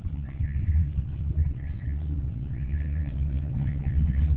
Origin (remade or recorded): remade